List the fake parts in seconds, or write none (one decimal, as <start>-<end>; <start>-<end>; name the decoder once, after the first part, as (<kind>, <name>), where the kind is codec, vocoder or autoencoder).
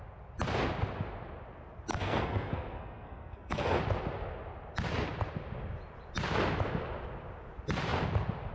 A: 1.9-3.8 (codec, SNAC)